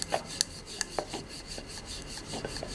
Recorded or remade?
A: recorded